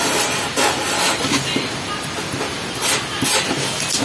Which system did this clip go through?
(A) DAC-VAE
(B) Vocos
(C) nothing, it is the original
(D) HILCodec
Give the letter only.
C